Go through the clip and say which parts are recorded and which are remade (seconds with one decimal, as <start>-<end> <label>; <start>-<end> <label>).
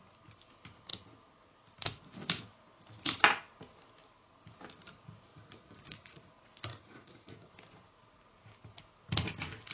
0.0-5.3 recorded; 5.3-6.3 remade; 6.3-6.7 recorded; 6.7-7.5 remade; 7.5-9.7 recorded